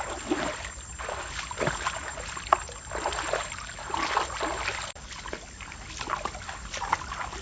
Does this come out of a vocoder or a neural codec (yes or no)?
no